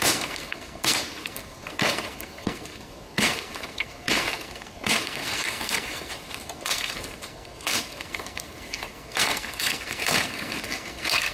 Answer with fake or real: fake